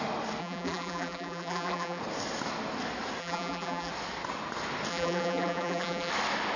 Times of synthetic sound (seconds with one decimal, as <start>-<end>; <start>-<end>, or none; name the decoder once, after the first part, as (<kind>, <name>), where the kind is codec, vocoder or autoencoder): 0.4-2.0 (vocoder, BigVGAN v2); 3.2-3.9; 4.9-6.1